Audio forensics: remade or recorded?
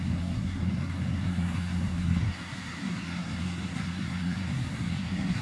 remade